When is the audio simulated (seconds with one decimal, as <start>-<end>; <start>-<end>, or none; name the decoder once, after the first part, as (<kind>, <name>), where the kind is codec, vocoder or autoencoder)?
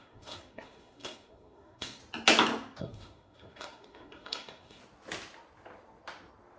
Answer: 0.0-2.0 (codec, SNAC); 2.8-4.8